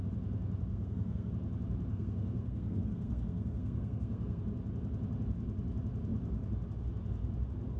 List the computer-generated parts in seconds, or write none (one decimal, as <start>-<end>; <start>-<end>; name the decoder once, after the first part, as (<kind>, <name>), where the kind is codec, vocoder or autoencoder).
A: 0.7-1.3 (codec, SNAC); 1.9-4.4